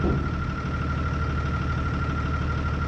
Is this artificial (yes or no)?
no